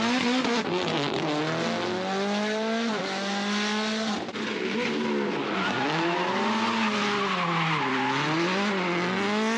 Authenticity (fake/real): real